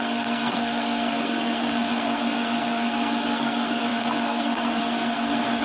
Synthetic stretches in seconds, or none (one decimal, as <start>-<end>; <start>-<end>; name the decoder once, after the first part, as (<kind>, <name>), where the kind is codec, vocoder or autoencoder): 0.0-5.6 (codec, SNAC)